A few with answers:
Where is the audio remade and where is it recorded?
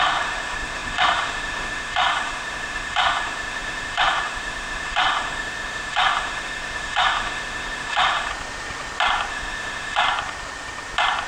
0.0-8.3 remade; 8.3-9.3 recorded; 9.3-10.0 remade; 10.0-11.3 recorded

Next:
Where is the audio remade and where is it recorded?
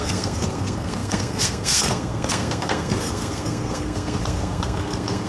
0.0-5.3 remade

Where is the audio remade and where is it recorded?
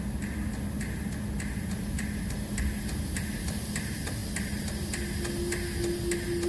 0.0-6.5 recorded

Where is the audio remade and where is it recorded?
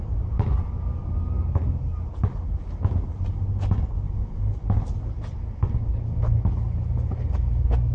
0.0-7.9 recorded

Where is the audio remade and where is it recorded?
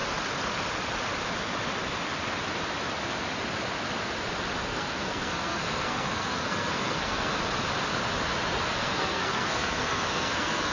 0.0-4.6 recorded; 4.6-7.3 remade; 7.3-8.6 recorded; 8.6-10.7 remade